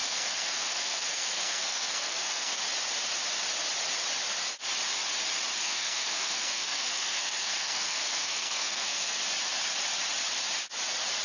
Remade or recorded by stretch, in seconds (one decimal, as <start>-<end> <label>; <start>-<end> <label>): 0.0-2.6 remade; 2.6-5.6 recorded; 5.6-9.2 remade; 9.2-11.2 recorded